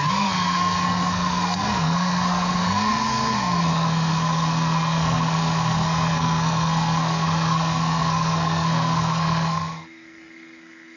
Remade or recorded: remade